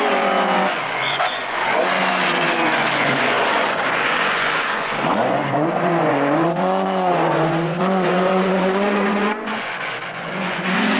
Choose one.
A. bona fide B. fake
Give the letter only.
B